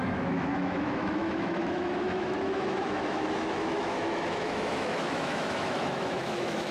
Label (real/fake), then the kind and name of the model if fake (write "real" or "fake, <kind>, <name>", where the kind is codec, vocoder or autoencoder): fake, autoencoder, DAC-VAE